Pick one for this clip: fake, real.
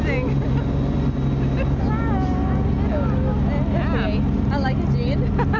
real